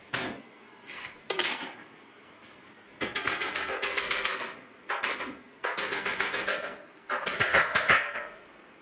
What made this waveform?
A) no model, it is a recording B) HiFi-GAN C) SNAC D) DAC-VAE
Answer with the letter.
C